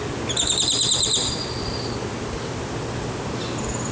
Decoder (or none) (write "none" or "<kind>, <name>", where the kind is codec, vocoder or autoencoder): none